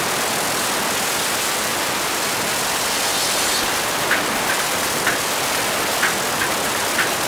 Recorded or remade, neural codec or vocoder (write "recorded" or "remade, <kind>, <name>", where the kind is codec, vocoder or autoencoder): recorded